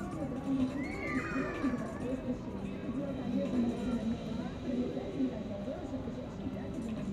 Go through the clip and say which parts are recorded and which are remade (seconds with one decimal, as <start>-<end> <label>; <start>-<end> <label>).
0.0-2.8 recorded; 2.8-6.3 remade; 6.3-7.1 recorded